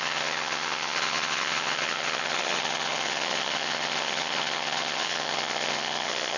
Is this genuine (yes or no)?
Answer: no